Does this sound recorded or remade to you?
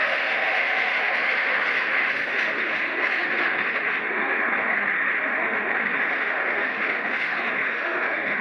remade